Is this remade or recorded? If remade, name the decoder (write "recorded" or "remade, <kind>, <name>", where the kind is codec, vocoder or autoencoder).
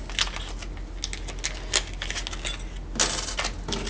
recorded